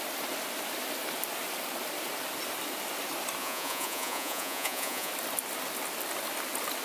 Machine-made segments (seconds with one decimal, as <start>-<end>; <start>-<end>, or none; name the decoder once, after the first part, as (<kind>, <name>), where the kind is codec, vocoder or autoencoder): 3.4-5.1 (vocoder, Vocos)